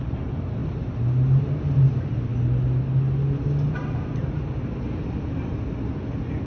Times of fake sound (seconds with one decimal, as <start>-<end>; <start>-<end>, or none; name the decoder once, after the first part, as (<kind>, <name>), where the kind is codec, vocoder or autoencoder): 0.0-0.6 (vocoder, BigVGAN v2); 1.4-2.3